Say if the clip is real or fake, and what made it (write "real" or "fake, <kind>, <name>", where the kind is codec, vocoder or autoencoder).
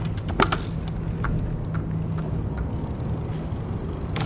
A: real